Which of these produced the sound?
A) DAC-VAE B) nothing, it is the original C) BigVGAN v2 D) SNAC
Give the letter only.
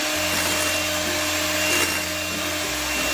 B